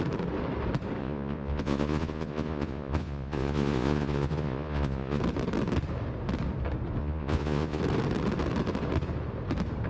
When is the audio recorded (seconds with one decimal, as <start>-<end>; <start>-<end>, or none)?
0.0-1.0; 5.2-7.0; 7.8-9.9